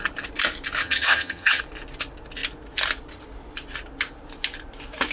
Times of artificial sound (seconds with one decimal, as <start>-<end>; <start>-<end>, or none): 0.8-1.6

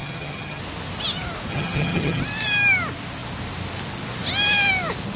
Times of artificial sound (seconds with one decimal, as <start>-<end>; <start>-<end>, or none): 0.0-0.6; 1.5-2.2

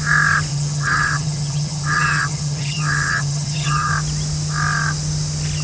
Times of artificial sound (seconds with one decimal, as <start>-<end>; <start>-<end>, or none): 0.5-3.9

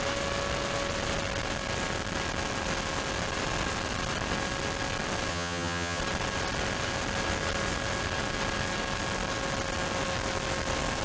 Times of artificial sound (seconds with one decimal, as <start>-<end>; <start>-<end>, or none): 5.3-6.0